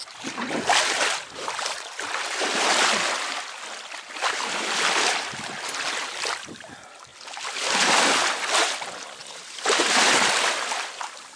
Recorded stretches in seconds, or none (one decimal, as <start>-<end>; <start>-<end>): 0.0-11.4